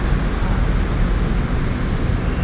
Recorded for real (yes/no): yes